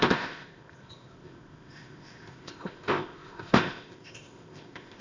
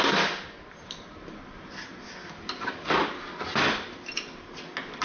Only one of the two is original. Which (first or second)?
second